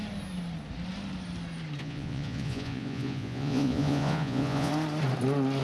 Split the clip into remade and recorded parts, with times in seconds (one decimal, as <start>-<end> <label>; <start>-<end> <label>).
0.0-1.8 recorded; 1.8-4.7 remade; 4.7-5.6 recorded